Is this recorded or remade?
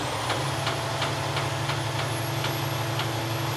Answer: recorded